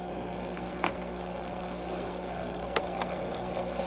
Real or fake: fake